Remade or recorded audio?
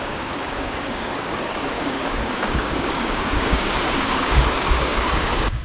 remade